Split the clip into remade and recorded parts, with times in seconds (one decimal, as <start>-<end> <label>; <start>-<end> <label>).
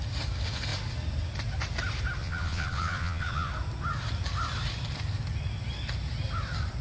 0.0-2.2 recorded; 2.2-3.5 remade; 3.5-6.8 recorded